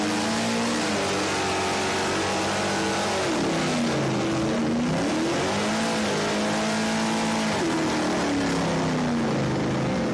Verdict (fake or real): real